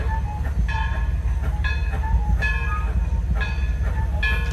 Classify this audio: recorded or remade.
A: recorded